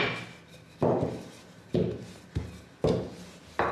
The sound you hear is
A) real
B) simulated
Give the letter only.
A